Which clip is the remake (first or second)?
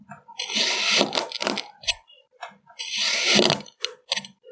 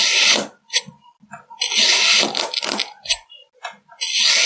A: first